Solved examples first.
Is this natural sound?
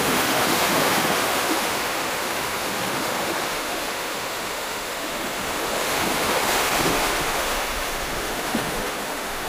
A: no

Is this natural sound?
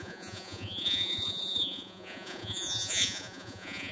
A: no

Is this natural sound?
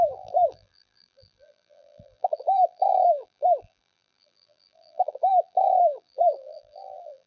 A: no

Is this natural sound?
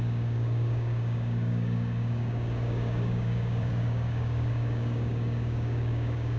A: no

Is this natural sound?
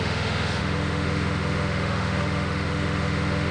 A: no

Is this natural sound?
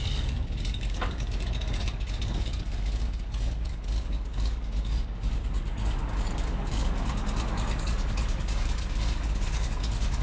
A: no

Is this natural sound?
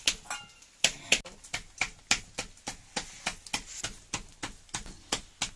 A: yes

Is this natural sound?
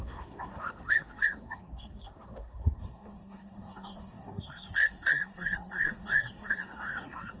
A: no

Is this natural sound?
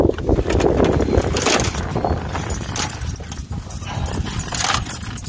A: yes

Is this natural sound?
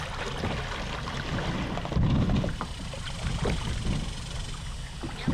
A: no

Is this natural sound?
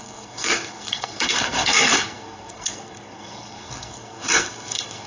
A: no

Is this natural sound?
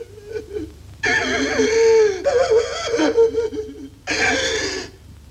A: yes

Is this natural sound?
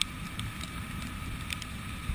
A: yes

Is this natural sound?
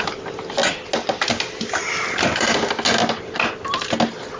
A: yes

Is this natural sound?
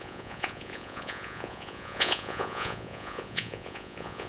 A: no